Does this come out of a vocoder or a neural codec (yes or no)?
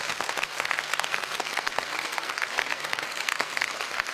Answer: yes